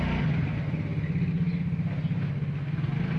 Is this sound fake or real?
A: real